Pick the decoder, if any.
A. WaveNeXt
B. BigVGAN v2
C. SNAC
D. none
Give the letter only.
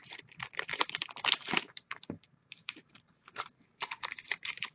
B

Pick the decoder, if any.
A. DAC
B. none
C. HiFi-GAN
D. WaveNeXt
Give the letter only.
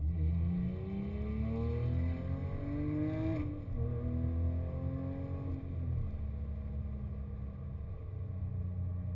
B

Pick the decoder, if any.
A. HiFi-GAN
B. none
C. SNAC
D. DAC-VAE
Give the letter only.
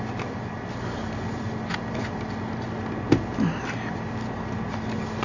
B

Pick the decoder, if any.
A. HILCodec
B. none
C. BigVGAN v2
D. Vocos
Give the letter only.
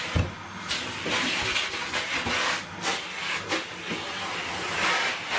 B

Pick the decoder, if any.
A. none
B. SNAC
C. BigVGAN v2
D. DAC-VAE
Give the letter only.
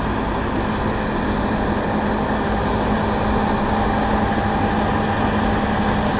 A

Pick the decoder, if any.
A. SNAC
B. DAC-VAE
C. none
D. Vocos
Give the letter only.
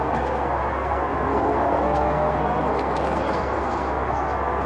A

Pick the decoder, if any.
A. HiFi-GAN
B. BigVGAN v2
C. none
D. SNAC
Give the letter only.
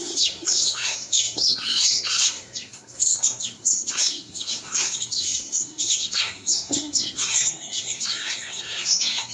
D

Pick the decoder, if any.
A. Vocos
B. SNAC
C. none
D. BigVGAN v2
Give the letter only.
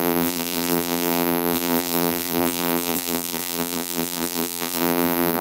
D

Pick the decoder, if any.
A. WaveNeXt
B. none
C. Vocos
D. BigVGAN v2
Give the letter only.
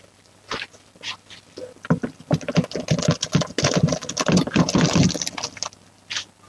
D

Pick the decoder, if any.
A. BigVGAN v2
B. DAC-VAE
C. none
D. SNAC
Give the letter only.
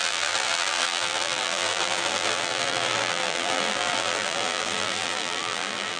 A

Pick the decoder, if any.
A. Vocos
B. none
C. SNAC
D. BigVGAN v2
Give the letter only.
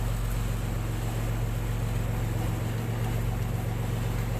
B